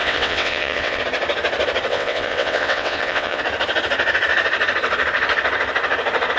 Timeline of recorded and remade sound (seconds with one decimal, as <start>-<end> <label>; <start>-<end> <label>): 0.0-1.0 remade; 1.0-1.9 recorded; 1.9-3.4 remade; 3.4-6.4 recorded